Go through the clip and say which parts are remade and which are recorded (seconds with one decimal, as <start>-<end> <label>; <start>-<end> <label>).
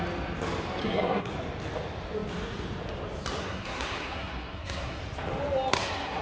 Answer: 0.0-0.8 recorded; 0.8-1.3 remade; 1.3-3.4 recorded; 3.4-5.0 remade; 5.0-5.7 recorded; 5.7-6.2 remade